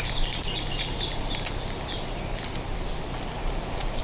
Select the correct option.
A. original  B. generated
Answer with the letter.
A